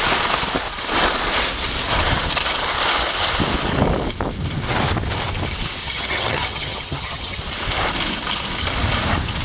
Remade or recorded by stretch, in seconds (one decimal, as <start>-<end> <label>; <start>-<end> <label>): 0.0-5.8 recorded; 5.8-7.4 remade; 7.4-9.4 recorded